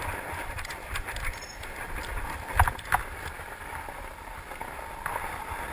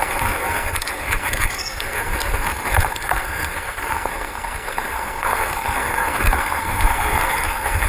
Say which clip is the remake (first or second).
second